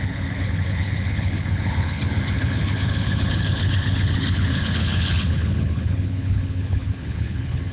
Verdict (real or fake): fake